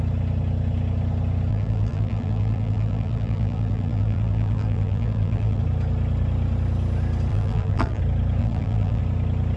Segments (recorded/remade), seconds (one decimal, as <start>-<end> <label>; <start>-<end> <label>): 0.0-1.5 recorded; 1.5-5.6 remade; 5.6-7.3 recorded; 7.3-8.0 remade; 8.0-8.4 recorded; 8.4-9.0 remade; 9.0-9.6 recorded